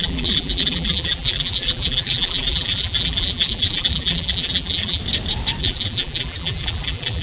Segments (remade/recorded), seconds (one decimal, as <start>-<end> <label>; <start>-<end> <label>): 0.0-5.0 remade; 5.0-5.6 recorded; 5.6-7.2 remade